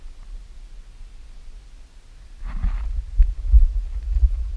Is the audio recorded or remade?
recorded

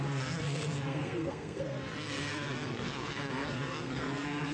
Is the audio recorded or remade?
remade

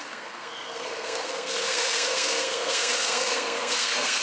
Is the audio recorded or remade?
remade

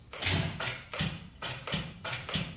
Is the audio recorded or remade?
recorded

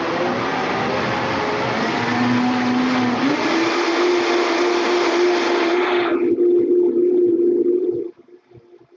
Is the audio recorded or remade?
recorded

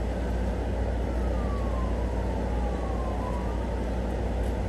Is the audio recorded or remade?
recorded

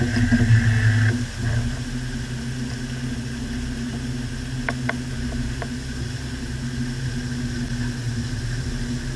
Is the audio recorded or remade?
recorded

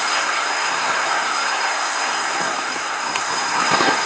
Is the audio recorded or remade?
remade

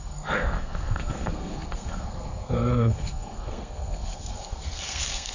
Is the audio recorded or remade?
remade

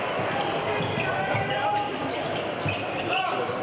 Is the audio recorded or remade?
recorded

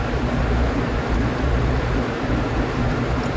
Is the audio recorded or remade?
recorded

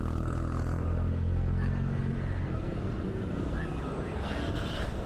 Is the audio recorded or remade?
remade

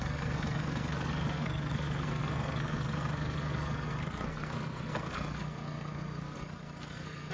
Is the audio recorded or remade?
remade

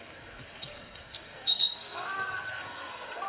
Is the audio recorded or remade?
remade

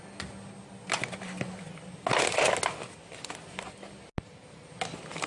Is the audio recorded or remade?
recorded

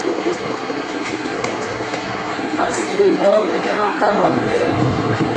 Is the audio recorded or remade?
remade